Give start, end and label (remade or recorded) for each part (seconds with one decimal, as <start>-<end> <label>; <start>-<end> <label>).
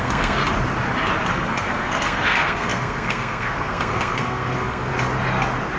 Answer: 0.0-0.4 remade; 0.4-1.3 recorded; 1.3-4.9 remade; 4.9-5.8 recorded